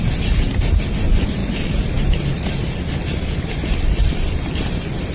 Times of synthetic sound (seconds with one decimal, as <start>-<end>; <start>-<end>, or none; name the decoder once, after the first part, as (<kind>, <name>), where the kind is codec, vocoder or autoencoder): 1.4-4.5 (vocoder, BigVGAN v2)